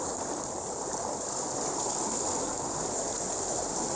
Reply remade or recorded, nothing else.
remade